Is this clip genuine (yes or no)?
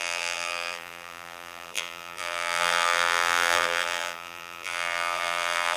no